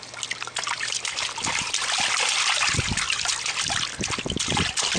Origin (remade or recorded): recorded